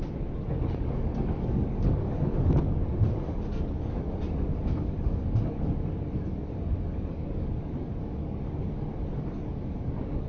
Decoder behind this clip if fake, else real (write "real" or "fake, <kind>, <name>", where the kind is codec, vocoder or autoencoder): fake, codec, DAC